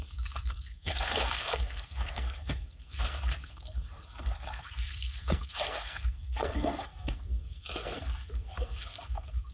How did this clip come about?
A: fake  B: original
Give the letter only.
A